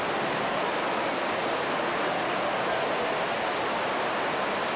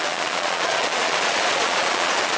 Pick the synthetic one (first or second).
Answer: second